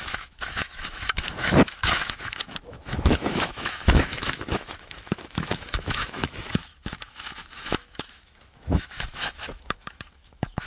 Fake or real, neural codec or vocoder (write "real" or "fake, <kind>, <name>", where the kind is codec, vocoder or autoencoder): fake, autoencoder, DAC-VAE